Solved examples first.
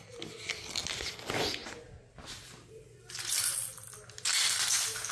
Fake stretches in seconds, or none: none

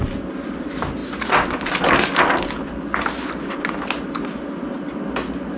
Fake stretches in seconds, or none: none

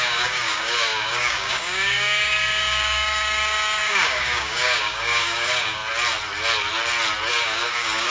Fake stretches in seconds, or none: 0.0-5.8; 7.3-8.1

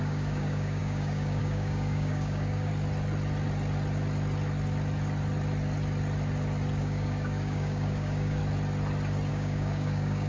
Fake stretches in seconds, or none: 0.0-2.7; 6.8-8.4; 9.3-10.3

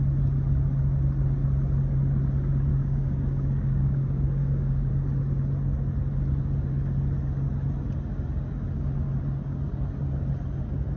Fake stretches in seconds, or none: 2.7-4.9

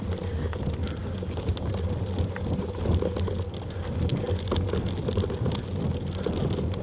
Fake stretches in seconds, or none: 1.0-1.7